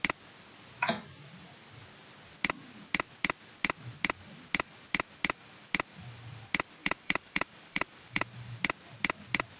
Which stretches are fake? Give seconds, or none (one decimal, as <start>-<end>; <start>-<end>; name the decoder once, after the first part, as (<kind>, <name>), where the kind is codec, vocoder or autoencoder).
6.8-8.6 (vocoder, BigVGAN v2)